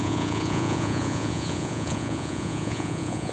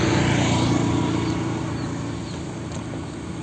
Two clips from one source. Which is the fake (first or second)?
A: first